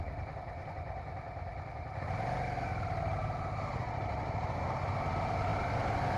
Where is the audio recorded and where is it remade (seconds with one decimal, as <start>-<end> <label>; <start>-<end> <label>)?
0.0-6.2 recorded